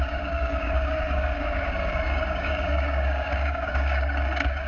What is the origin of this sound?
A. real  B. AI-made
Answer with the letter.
B